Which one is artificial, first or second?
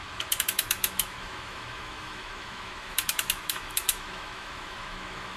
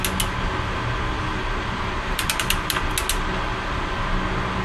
first